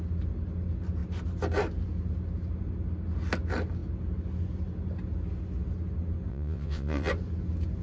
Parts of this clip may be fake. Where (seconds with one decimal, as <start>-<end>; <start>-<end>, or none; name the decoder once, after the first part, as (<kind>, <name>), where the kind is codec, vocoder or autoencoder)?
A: 6.3-7.1 (vocoder, WaveNeXt)